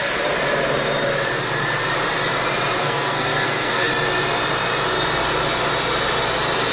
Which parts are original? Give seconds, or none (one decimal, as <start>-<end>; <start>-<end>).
0.0-2.8; 3.9-6.7